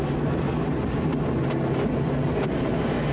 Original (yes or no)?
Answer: yes